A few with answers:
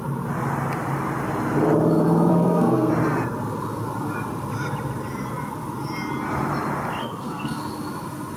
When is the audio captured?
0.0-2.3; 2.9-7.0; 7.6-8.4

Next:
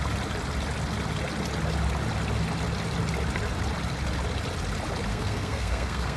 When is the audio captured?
0.0-5.1

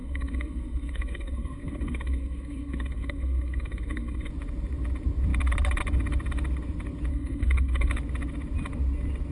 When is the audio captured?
4.3-7.1; 7.9-9.3

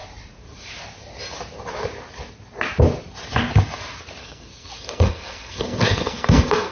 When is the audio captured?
0.0-4.2

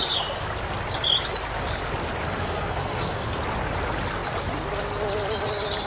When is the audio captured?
0.0-2.4; 3.4-5.9

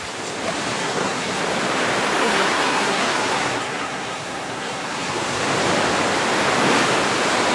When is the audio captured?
0.0-0.8; 1.4-2.2; 5.4-7.5

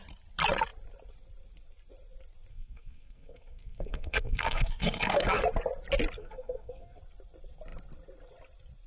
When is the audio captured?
0.0-2.5; 5.4-6.2; 7.0-8.9